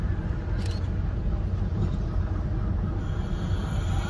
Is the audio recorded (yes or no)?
yes